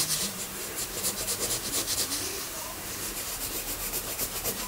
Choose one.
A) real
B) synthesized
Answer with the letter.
B